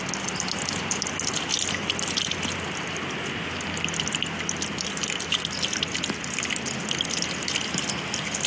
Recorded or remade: recorded